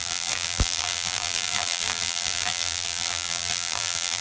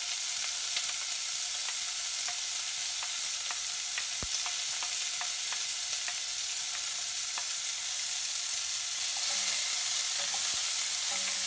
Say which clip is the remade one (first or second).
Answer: first